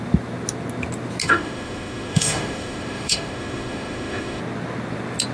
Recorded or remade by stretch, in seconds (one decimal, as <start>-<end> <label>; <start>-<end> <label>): 0.0-1.2 recorded; 1.2-4.4 remade; 4.4-5.3 recorded